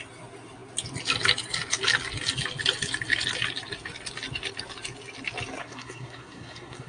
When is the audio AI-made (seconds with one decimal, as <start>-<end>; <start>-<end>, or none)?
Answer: 5.6-6.9